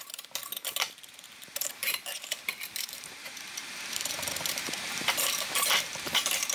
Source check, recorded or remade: remade